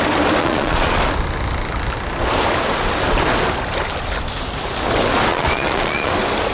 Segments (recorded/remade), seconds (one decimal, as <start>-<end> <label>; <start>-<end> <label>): 0.0-0.4 recorded; 0.4-1.0 remade; 1.0-5.3 recorded; 5.3-6.1 remade; 6.1-6.5 recorded